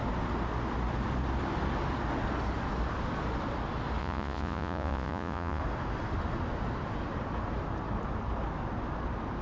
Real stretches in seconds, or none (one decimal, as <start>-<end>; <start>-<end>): 0.0-4.0; 5.6-9.4